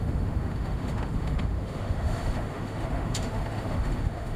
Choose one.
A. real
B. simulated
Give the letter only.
B